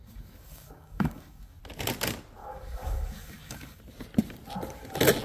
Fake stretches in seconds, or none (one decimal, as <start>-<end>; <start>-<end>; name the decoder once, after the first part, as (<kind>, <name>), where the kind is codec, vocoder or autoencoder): 0.0-1.6 (codec, DAC); 2.4-3.8